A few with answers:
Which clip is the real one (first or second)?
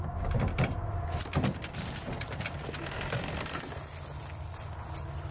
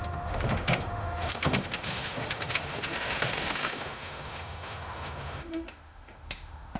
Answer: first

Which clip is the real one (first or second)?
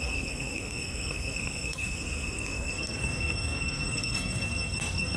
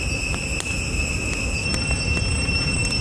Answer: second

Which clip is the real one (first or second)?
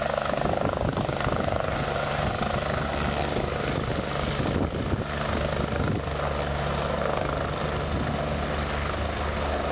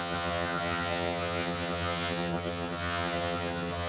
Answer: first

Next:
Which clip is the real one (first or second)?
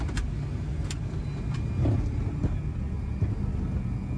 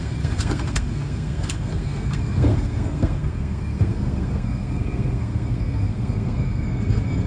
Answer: first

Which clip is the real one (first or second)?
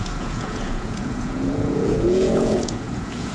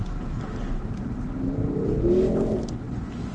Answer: second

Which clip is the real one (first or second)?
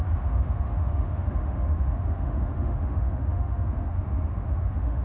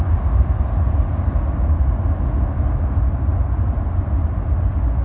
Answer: second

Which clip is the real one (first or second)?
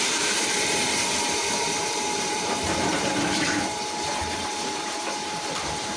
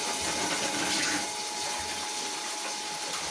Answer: second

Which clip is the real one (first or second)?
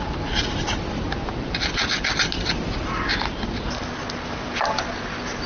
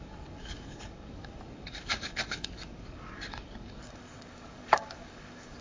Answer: first